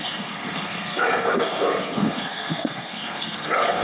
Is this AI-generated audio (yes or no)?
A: yes